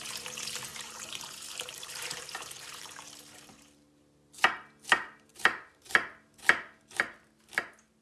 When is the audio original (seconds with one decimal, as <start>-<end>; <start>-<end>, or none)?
0.0-0.7; 4.0-5.3; 5.9-8.0

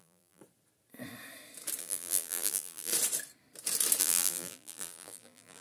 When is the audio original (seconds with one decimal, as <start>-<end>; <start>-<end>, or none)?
0.4-1.8; 2.9-4.0

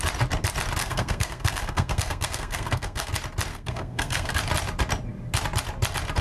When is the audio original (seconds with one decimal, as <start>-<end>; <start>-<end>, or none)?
0.0-0.8; 3.1-3.5; 4.3-6.2

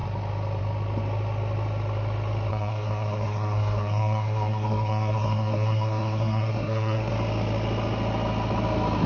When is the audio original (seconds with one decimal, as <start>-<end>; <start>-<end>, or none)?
0.0-2.5; 7.1-9.1

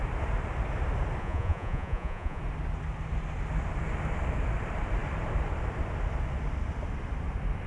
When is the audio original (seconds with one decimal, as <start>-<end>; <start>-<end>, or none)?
0.0-1.2; 2.4-7.7

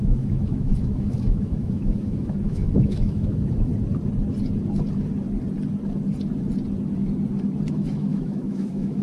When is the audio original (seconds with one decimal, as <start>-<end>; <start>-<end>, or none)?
3.7-7.7